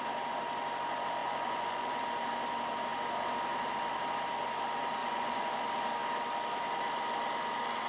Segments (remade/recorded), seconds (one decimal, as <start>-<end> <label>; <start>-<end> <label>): 0.0-1.2 recorded; 1.2-2.0 remade; 2.0-5.0 recorded; 5.0-5.6 remade; 5.6-7.9 recorded